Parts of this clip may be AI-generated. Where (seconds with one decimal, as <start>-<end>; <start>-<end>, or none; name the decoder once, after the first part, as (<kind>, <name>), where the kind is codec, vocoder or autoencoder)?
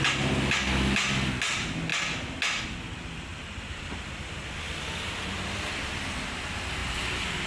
3.3-3.9 (vocoder, BigVGAN v2)